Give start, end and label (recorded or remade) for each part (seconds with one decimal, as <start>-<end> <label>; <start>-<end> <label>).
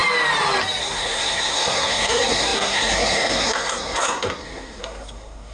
0.0-0.8 recorded; 0.8-5.5 remade